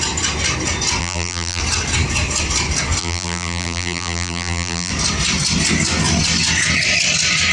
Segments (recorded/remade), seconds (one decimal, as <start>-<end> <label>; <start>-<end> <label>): 0.0-1.0 recorded; 1.0-1.6 remade; 1.6-3.0 recorded; 3.0-4.9 remade; 4.9-7.5 recorded